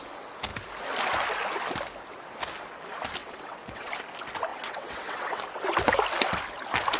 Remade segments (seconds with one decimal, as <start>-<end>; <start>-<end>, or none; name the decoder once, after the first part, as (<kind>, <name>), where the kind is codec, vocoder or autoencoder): 3.2-3.9 (vocoder, WaveNeXt); 4.5-5.4